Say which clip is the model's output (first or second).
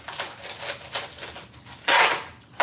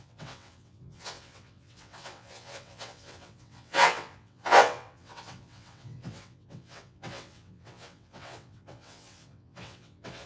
second